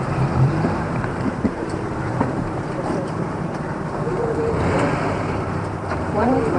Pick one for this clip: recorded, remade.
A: remade